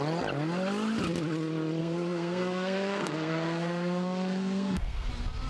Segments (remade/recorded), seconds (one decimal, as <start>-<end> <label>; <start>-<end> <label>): 0.0-1.8 recorded; 1.8-5.1 remade; 5.1-5.5 recorded